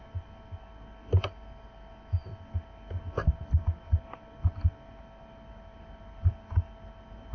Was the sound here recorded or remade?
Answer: recorded